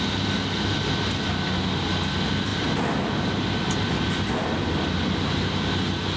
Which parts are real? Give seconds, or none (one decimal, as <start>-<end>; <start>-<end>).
0.0-6.2